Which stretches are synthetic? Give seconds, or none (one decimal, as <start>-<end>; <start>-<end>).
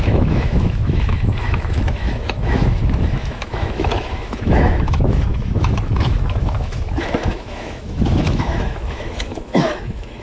0.0-10.2